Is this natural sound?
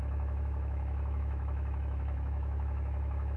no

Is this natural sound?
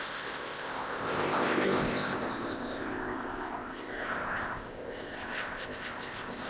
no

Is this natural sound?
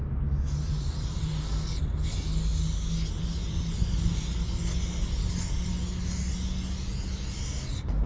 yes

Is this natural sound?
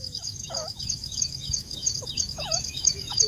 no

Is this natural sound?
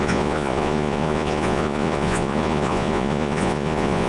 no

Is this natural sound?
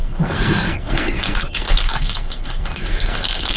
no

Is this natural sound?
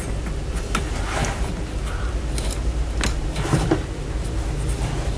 yes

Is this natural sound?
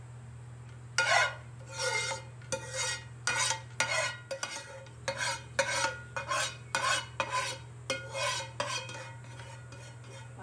yes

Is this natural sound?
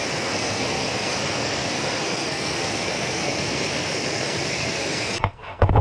no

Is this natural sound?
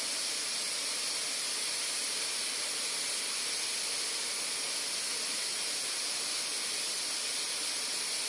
yes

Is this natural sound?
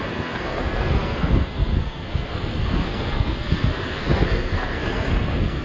no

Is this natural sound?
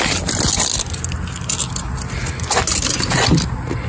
yes